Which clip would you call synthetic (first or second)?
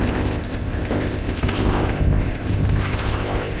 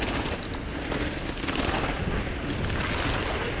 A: first